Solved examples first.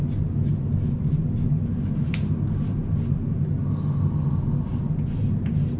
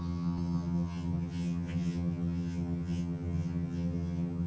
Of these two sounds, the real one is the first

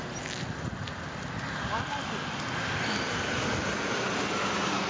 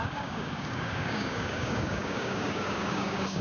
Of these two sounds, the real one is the first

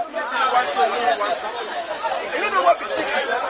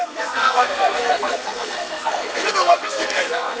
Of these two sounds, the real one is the first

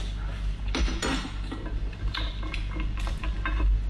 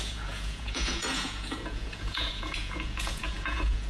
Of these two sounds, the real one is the first